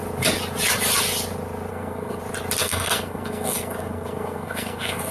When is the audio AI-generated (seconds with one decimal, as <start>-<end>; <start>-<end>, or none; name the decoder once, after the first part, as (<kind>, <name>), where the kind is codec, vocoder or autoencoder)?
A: 1.7-2.2 (codec, SNAC); 2.6-5.1